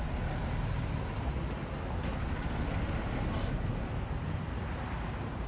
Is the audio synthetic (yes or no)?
no